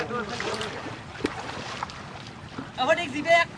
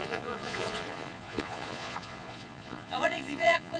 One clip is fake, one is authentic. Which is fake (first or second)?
second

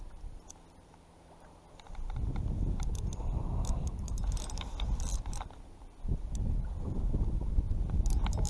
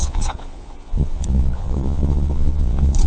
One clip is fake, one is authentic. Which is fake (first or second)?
second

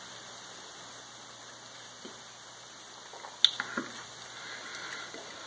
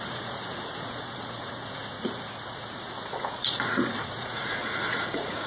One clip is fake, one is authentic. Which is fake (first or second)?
second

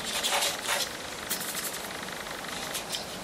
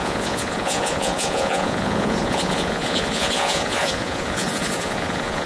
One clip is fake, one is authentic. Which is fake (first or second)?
second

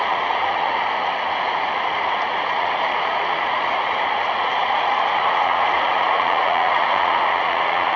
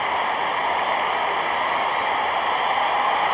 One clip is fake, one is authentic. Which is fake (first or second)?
first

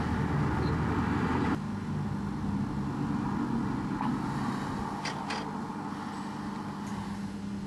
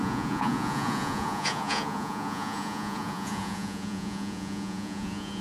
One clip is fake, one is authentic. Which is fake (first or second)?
second